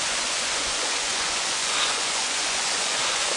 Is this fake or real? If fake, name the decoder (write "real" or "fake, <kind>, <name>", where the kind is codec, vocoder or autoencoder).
fake, vocoder, Vocos